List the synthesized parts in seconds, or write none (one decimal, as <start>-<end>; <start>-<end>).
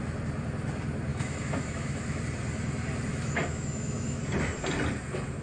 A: 1.1-2.2; 3.1-4.2